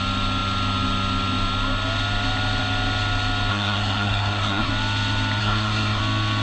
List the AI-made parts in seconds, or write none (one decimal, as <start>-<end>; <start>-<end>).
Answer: 3.5-4.7; 5.4-6.0